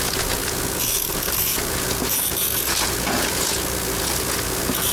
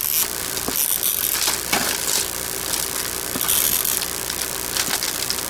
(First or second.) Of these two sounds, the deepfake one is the first